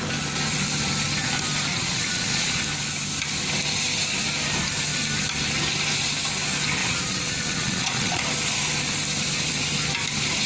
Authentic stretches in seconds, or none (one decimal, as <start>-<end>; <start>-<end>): 0.0-1.7; 2.6-6.8; 8.2-10.5